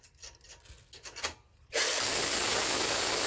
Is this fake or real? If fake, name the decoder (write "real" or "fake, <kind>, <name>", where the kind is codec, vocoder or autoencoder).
real